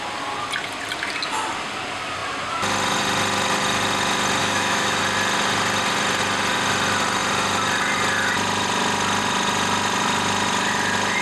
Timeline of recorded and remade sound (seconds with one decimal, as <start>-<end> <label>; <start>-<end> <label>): 0.0-4.4 recorded; 4.4-5.0 remade; 5.0-11.2 recorded